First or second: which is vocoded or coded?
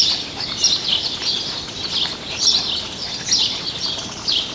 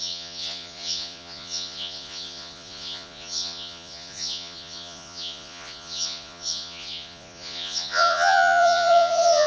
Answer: second